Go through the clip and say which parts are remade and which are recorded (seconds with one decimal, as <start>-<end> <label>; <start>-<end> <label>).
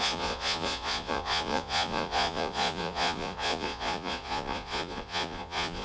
0.0-5.8 remade